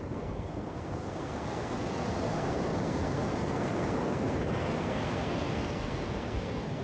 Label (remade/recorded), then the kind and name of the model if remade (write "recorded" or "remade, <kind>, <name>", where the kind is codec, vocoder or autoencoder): remade, codec, SNAC